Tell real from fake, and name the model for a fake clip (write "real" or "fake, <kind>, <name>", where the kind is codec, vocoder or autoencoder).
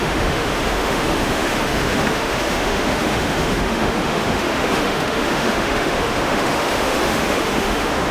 fake, autoencoder, DAC-VAE